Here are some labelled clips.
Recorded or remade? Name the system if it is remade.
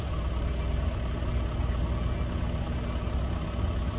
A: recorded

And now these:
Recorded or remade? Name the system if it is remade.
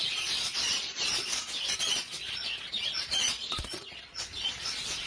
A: remade, vocoder, Vocos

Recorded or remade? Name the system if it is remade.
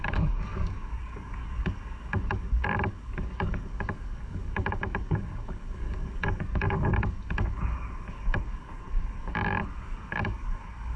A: remade, codec, DAC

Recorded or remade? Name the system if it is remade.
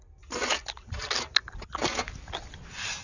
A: recorded